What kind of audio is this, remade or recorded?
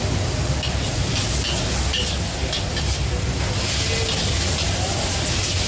recorded